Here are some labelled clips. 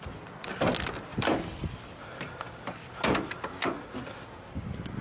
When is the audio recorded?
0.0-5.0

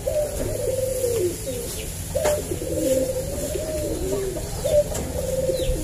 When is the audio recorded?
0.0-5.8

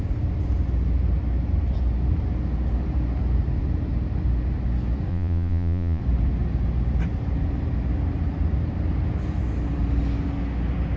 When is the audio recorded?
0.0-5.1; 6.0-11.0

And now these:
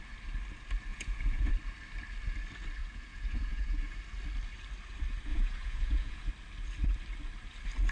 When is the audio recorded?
0.0-0.9; 1.5-2.8; 3.8-5.3; 6.3-7.9

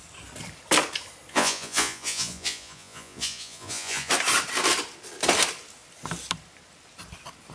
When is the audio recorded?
0.0-1.3; 4.1-7.5

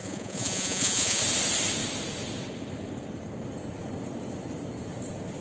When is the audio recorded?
1.2-5.4

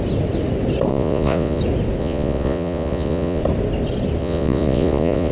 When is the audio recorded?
0.0-0.9; 1.6-2.0; 3.4-4.2

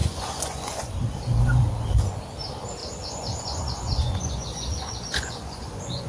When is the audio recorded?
0.9-2.8